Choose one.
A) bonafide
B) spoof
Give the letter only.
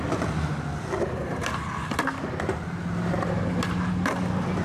A